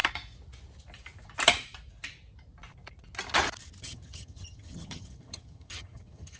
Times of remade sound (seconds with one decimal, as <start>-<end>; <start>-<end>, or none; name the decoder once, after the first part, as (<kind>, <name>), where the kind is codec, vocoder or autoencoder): 3.8-6.4 (vocoder, HiFi-GAN)